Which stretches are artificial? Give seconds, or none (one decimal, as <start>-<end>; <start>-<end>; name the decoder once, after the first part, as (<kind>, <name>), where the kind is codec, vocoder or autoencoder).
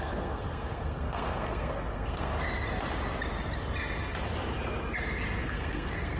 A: 0.0-2.3 (codec, SNAC); 5.4-6.2